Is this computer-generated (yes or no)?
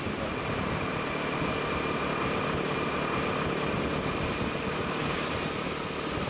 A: no